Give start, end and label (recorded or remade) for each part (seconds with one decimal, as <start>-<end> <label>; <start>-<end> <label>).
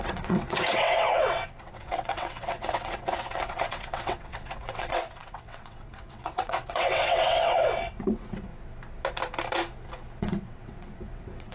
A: 0.0-8.5 remade; 8.5-10.2 recorded; 10.2-11.5 remade